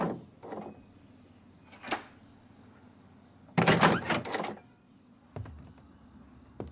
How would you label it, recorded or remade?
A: recorded